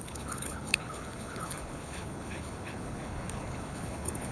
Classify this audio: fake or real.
fake